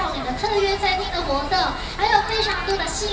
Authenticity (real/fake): real